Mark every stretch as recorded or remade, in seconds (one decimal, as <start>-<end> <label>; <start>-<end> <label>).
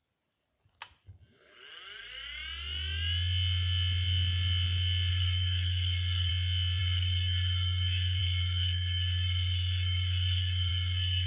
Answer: 0.0-5.1 recorded; 5.1-6.3 remade; 6.3-6.8 recorded; 6.8-11.3 remade